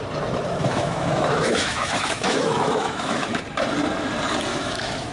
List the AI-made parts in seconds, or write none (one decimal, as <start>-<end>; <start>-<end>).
0.6-3.4; 4.5-5.1